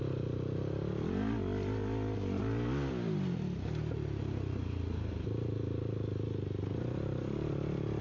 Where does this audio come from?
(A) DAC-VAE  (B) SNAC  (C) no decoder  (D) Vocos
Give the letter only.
C